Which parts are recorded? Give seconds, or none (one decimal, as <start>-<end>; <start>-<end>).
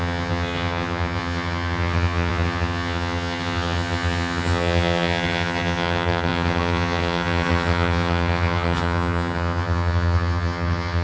none